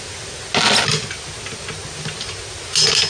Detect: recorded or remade recorded